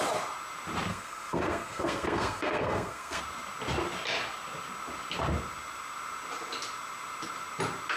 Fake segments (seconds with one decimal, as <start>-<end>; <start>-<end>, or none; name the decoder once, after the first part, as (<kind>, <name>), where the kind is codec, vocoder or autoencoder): 0.9-3.2 (codec, SNAC)